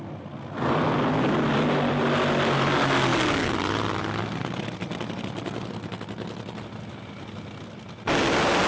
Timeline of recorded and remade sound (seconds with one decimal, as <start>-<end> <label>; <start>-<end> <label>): 0.0-8.7 recorded